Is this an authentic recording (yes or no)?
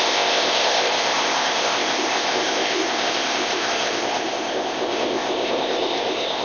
no